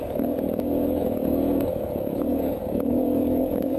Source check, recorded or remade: remade